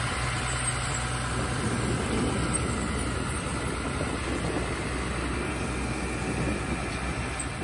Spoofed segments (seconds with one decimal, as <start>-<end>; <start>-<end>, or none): none